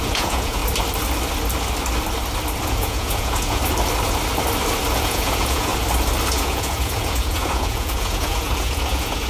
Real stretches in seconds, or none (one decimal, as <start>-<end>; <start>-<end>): 0.6-2.7; 3.6-5.0; 5.7-6.3